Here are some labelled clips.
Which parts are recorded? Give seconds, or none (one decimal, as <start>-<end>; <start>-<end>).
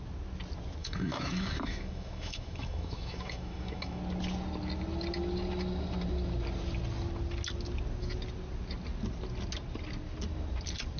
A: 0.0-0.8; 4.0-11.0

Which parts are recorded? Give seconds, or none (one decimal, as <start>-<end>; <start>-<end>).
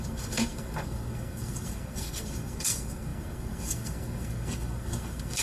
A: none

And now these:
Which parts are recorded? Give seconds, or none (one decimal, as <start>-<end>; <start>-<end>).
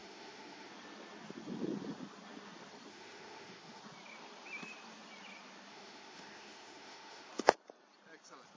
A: 0.7-2.9; 3.8-5.7; 7.3-8.6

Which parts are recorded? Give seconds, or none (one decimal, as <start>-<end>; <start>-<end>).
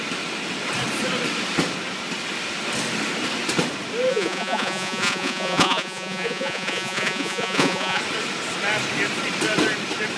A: 0.0-4.1; 8.0-10.2